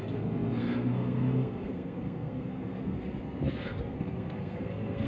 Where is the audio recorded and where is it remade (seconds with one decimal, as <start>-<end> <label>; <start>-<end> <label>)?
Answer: 0.0-5.1 remade